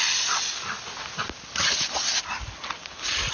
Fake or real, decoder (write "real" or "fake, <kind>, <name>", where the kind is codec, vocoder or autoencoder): real